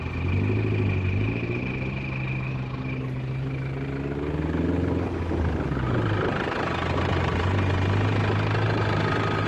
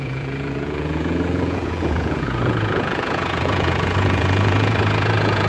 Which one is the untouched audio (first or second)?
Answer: first